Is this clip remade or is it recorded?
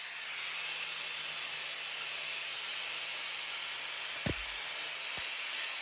recorded